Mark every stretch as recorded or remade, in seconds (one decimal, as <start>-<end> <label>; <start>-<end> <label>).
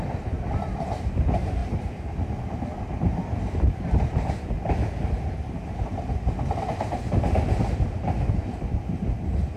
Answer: 0.0-9.6 recorded